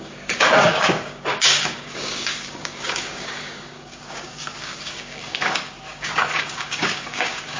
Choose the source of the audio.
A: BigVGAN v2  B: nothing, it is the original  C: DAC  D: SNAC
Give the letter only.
C